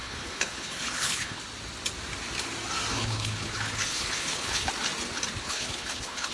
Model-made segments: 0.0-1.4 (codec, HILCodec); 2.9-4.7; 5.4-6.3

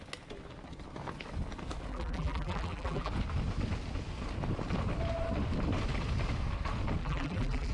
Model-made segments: 1.9-3.1 (vocoder, BigVGAN v2); 7.0-7.7

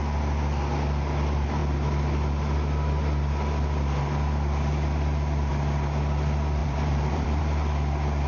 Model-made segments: 6.6-7.4 (vocoder, BigVGAN v2)